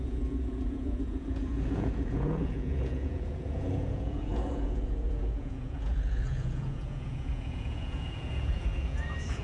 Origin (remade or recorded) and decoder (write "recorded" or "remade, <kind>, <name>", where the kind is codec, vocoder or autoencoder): remade, vocoder, Vocos